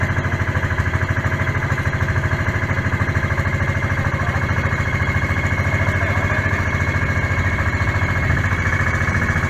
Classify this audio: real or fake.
real